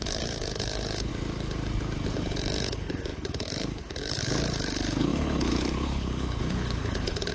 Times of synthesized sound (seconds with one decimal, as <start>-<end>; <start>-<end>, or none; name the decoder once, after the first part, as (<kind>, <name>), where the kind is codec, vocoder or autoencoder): 0.0-1.1 (codec, HILCodec); 2.1-7.3